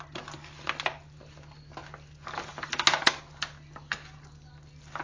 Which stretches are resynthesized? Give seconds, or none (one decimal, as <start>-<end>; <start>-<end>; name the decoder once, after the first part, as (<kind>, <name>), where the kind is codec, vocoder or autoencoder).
none